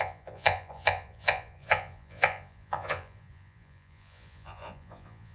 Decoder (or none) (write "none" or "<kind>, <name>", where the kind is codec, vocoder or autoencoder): vocoder, Vocos